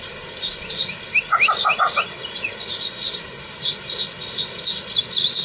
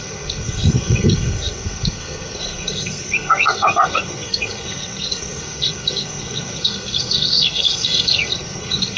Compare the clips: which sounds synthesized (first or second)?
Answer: second